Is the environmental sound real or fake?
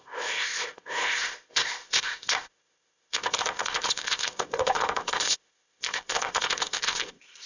fake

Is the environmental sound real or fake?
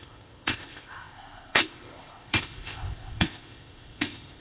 fake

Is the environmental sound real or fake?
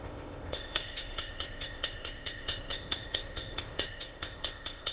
fake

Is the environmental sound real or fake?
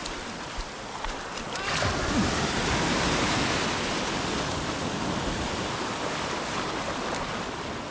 real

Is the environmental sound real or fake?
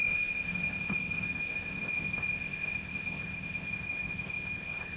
fake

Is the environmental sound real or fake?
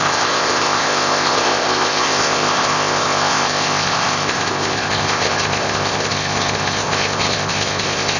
fake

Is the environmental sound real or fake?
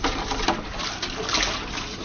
real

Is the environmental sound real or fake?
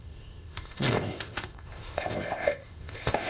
fake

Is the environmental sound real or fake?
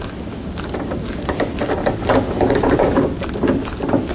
real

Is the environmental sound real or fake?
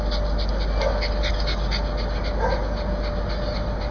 real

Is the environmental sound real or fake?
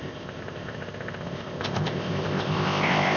fake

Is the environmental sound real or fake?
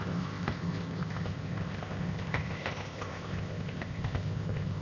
fake